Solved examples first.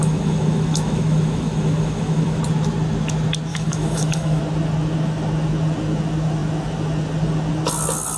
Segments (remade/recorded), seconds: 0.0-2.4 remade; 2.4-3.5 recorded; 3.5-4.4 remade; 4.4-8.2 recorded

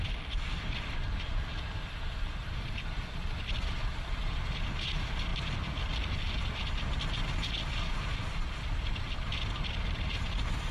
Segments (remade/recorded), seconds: 0.0-10.7 recorded

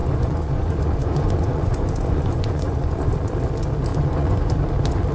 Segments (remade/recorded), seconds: 0.0-3.1 remade; 3.1-3.9 recorded; 3.9-4.5 remade; 4.5-5.1 recorded

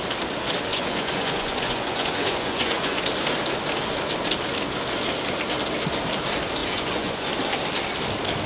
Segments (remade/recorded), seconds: 0.0-0.7 recorded; 0.7-3.0 remade; 3.0-6.6 recorded; 6.6-7.3 remade; 7.3-8.5 recorded

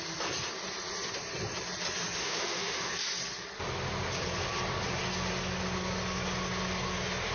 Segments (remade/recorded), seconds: 0.0-2.2 recorded; 2.2-2.9 remade; 2.9-7.3 recorded